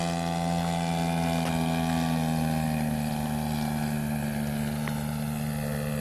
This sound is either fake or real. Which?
real